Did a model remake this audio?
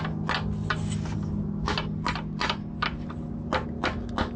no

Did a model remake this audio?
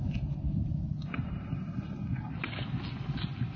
no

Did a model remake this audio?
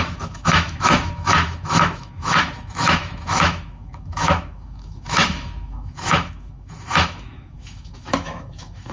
yes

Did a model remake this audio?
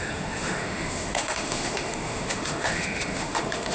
yes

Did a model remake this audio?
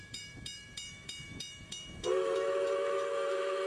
yes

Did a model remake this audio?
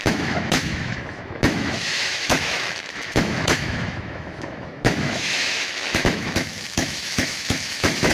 yes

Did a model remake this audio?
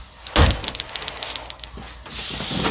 no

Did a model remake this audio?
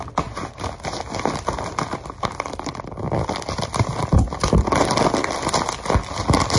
no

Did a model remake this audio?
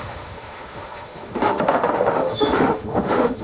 yes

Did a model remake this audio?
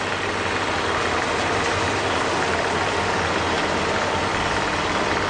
no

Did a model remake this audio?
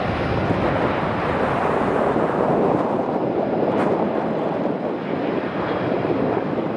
no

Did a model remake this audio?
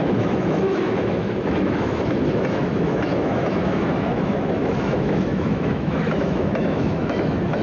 yes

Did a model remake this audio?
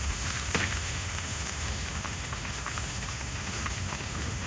yes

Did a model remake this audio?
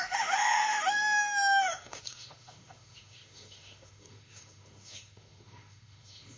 yes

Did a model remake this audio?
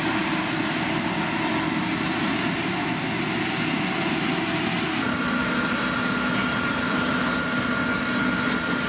no